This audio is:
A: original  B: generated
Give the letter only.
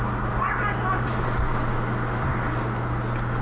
A